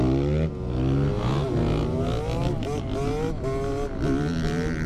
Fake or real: real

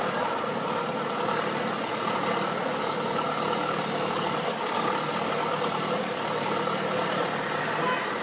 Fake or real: real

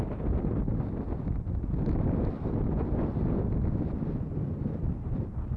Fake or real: real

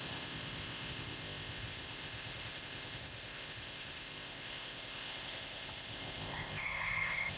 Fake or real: fake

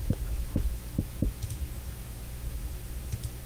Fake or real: fake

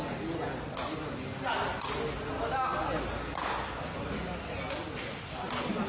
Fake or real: real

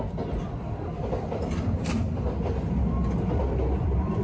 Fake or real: fake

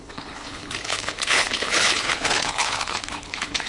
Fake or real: fake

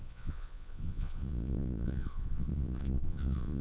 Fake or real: fake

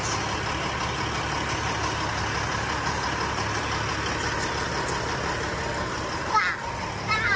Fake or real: real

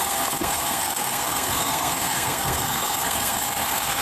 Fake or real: fake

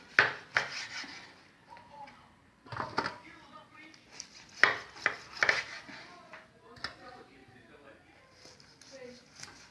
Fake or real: real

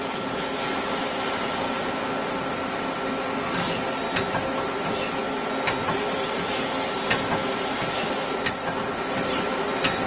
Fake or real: real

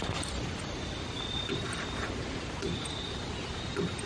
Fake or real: real